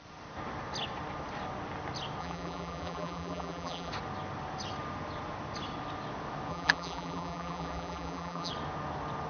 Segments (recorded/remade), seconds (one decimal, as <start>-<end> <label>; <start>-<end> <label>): 0.0-2.2 recorded; 2.2-3.9 remade; 3.9-6.5 recorded; 6.5-8.5 remade; 8.5-9.3 recorded